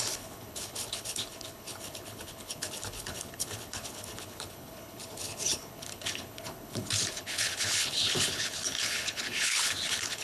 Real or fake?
fake